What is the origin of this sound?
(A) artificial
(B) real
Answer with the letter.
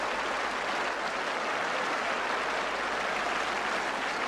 B